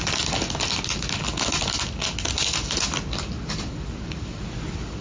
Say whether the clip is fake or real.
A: real